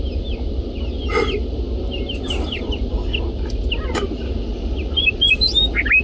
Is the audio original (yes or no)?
yes